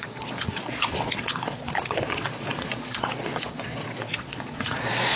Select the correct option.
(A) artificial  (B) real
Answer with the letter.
A